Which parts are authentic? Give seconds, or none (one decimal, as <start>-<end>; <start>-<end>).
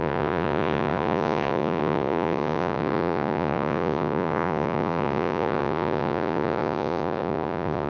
none